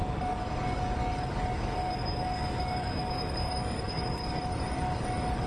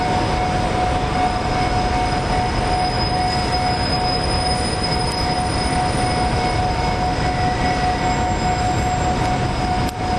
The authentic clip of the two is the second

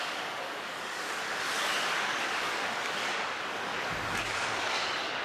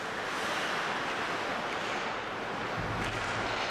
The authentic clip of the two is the second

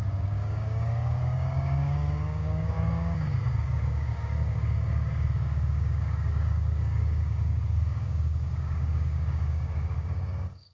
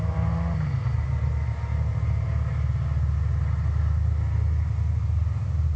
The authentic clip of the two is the second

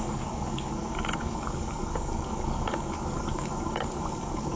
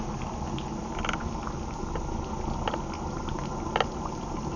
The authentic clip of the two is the second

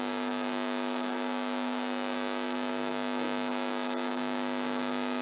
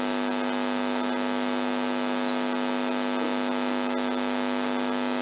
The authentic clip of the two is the second